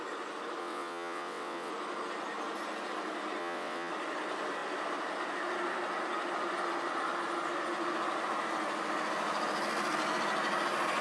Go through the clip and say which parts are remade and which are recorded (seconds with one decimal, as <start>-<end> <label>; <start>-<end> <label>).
0.0-0.6 recorded; 0.6-1.7 remade; 1.7-3.4 recorded; 3.4-3.9 remade; 3.9-11.0 recorded